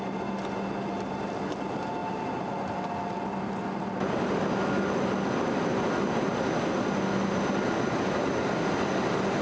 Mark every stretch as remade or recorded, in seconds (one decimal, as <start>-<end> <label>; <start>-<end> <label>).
0.0-9.4 recorded

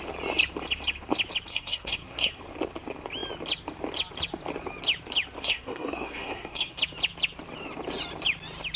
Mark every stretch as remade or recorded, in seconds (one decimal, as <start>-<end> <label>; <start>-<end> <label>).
0.0-1.5 recorded; 1.5-2.4 remade; 2.4-5.4 recorded; 5.4-6.8 remade; 6.8-8.8 recorded

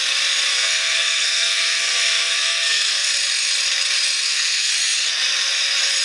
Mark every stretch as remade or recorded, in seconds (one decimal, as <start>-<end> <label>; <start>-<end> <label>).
0.0-0.5 recorded; 0.5-3.1 remade; 3.1-4.2 recorded; 4.2-4.7 remade; 4.7-6.0 recorded

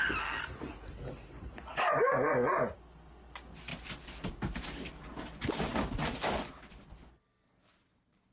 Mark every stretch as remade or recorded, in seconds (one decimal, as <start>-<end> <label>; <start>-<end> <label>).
0.0-8.3 recorded

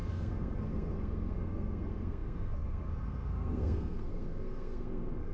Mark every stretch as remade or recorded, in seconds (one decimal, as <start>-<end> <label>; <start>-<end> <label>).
0.0-5.3 remade

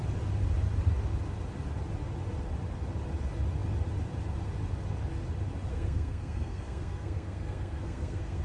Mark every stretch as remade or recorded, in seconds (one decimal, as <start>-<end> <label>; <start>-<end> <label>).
0.0-5.7 recorded; 5.7-8.4 remade

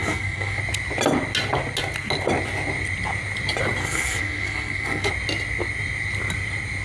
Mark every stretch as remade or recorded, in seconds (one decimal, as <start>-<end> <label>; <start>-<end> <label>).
0.0-0.6 remade; 0.6-3.8 recorded; 3.8-5.1 remade; 5.1-6.8 recorded